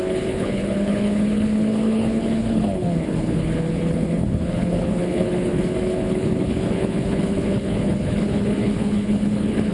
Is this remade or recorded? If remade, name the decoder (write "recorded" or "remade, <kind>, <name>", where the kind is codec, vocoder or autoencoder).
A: remade, codec, HILCodec